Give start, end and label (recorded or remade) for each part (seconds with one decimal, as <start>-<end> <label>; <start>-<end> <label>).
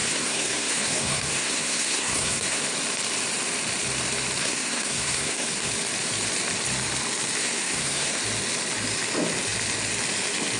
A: 0.0-2.6 remade; 2.6-4.4 recorded; 4.4-5.7 remade; 5.7-7.4 recorded; 7.4-8.2 remade; 8.2-10.6 recorded